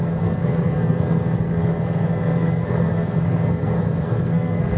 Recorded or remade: remade